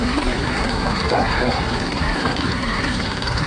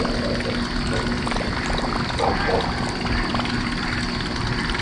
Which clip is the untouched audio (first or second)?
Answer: second